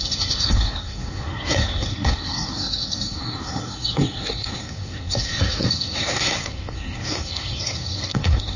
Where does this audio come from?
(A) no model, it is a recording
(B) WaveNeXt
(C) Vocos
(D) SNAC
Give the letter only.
D